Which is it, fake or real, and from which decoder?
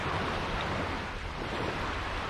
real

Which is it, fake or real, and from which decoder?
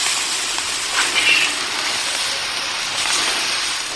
real